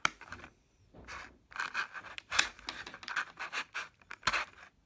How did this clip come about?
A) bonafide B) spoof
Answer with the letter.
A